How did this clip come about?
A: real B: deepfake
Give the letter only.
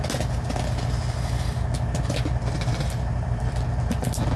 A